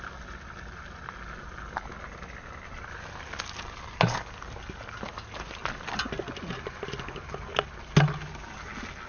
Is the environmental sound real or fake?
real